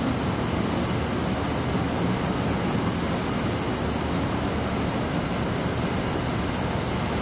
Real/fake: real